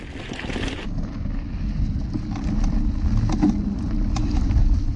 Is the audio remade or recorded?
recorded